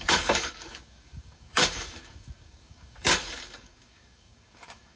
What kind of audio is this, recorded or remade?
remade